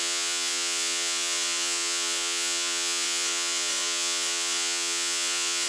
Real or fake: fake